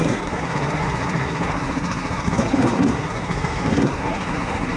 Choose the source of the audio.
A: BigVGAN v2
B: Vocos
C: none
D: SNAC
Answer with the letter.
D